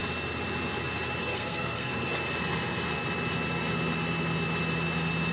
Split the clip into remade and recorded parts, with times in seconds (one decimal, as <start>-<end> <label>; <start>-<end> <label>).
0.0-1.2 recorded; 1.2-1.9 remade; 1.9-5.3 recorded